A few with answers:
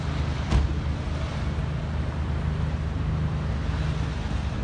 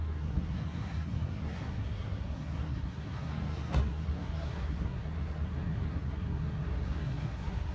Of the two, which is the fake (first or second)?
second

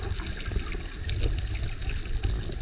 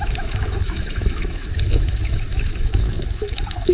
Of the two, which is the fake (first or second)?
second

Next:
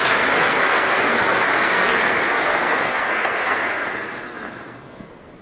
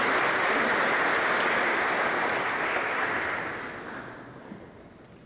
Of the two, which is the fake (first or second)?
first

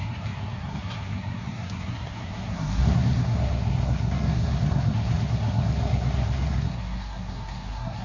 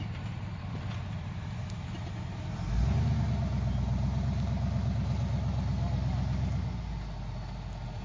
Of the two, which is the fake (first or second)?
first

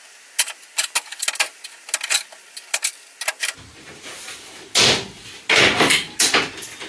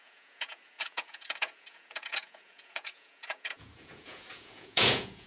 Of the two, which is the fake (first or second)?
second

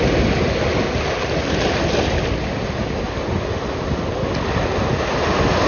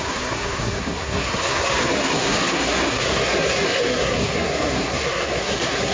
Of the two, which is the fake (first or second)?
second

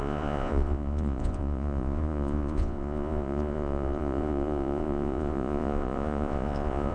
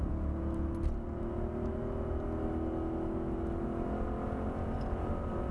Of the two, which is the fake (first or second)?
first